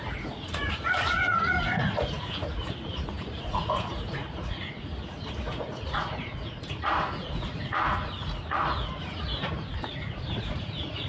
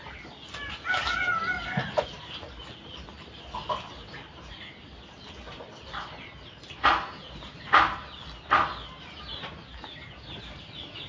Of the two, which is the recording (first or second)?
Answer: second